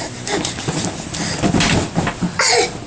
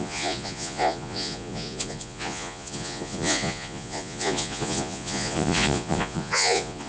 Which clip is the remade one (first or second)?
second